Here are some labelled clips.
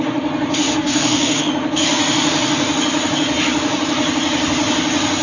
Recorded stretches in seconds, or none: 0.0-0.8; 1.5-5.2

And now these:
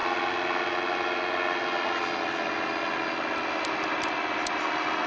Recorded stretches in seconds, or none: 0.0-5.1

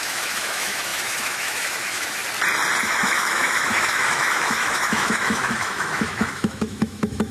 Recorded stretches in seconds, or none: 2.2-2.8